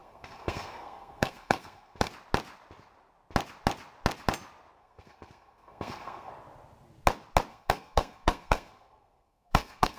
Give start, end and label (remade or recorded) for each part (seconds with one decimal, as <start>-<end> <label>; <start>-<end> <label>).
0.0-2.1 remade; 2.1-4.8 recorded; 4.8-6.3 remade; 6.3-7.5 recorded; 7.5-10.0 remade

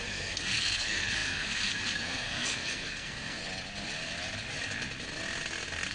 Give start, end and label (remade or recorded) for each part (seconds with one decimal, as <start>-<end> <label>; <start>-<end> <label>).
0.0-3.4 remade; 3.4-5.9 recorded

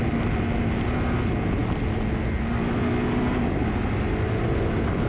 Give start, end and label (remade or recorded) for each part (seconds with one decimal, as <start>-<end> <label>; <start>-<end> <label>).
0.0-5.1 recorded

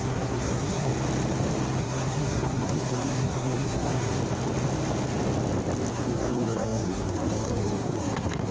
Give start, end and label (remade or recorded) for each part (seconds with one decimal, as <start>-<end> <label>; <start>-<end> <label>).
0.0-0.9 remade; 0.9-1.8 recorded; 1.8-4.2 remade; 4.2-5.9 recorded; 5.9-8.5 remade

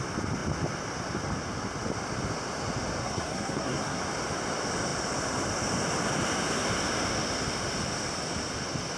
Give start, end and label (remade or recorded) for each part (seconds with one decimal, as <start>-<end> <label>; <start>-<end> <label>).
0.0-3.0 recorded; 3.0-4.0 remade; 4.0-9.0 recorded

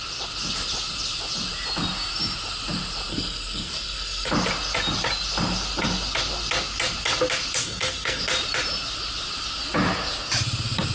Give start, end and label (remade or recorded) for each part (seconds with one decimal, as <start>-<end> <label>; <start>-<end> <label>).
0.0-3.1 recorded; 3.1-4.3 remade; 4.3-7.6 recorded; 7.6-8.2 remade; 8.2-10.9 recorded

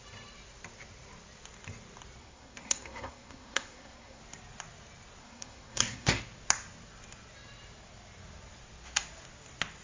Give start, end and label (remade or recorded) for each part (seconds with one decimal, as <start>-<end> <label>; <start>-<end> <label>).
0.0-2.2 recorded; 2.2-4.2 remade; 4.2-5.2 recorded; 5.2-6.2 remade; 6.2-9.8 recorded